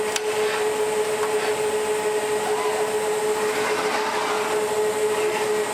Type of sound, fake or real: real